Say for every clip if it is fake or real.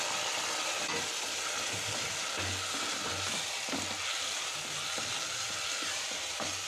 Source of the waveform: real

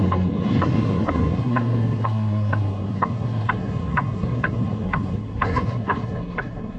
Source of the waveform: fake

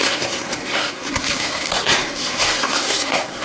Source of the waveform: fake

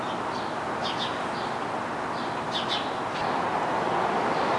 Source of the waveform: real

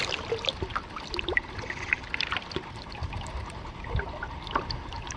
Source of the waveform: real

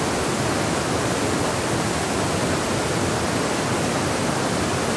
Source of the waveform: real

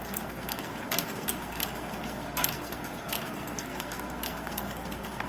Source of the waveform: fake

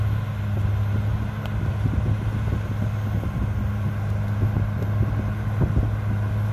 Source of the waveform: real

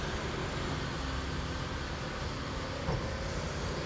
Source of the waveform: real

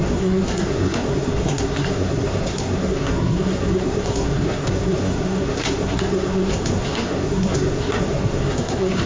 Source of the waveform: fake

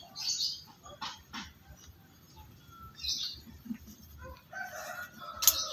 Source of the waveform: real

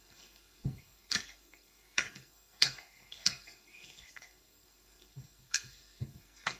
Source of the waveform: fake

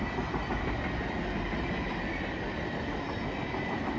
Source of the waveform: real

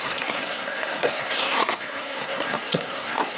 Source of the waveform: fake